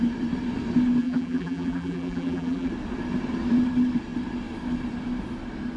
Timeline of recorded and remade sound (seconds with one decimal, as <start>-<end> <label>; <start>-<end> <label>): 0.0-1.0 recorded; 1.0-2.7 remade; 2.7-5.8 recorded